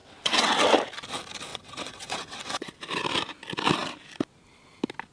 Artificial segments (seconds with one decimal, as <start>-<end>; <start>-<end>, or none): 0.0-0.6; 1.5-2.7